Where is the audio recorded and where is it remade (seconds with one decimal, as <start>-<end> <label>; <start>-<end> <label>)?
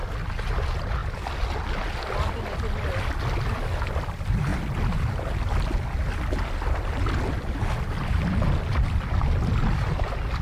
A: 0.0-10.4 recorded